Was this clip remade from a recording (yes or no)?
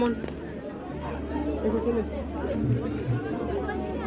no